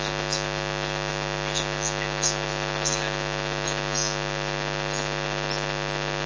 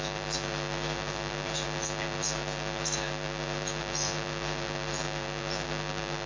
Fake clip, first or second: second